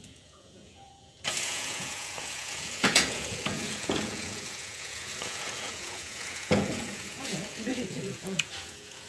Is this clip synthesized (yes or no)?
yes